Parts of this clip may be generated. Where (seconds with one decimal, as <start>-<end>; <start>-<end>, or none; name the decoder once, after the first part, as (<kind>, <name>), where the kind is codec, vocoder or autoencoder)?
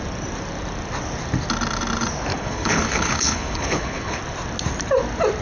2.3-4.2 (codec, HILCodec)